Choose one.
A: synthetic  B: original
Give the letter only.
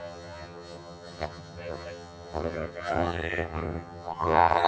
A